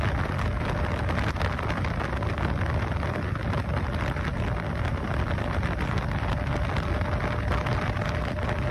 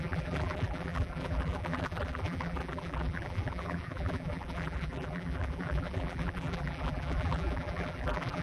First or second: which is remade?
second